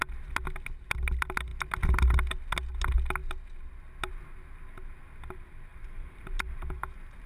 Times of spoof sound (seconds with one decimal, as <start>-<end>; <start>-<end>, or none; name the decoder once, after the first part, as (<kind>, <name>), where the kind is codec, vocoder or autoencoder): 5.7-7.3 (vocoder, BigVGAN v2)